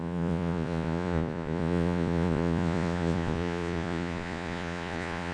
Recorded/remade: remade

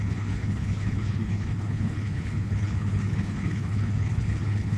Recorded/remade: remade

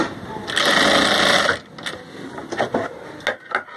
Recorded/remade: recorded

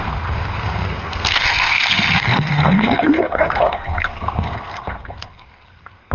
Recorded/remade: remade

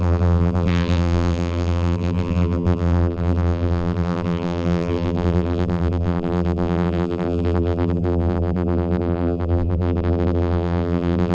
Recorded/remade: remade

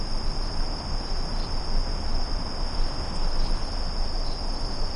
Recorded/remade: recorded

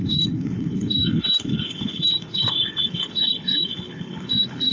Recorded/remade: remade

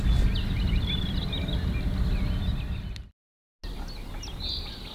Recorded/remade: recorded